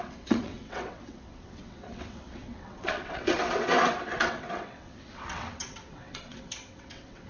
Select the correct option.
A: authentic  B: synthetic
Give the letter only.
B